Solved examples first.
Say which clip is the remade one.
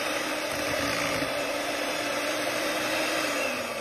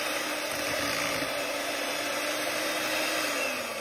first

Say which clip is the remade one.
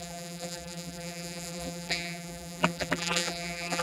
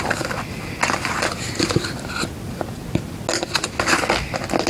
first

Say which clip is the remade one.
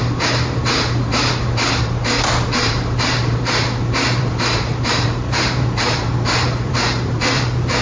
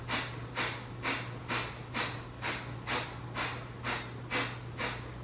first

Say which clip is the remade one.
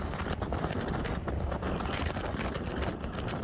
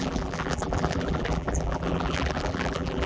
second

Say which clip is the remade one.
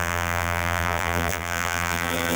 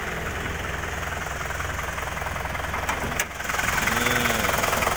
first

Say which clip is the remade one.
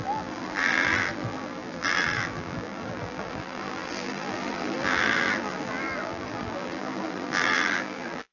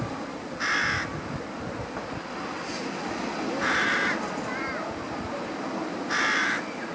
first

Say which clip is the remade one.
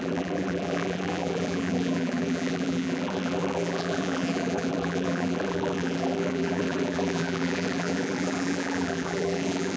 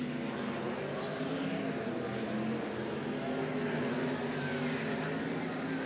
first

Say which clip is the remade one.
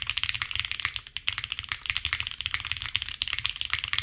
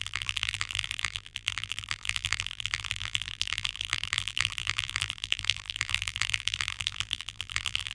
second